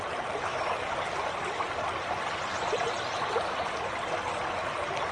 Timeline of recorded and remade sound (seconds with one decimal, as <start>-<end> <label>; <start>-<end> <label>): 0.0-5.1 recorded